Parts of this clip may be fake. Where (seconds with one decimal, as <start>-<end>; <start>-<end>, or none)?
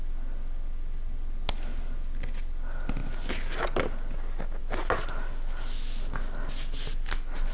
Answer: none